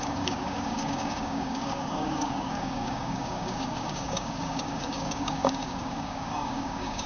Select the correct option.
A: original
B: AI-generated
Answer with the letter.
B